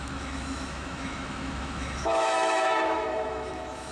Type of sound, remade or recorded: remade